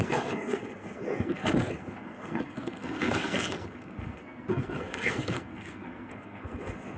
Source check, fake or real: fake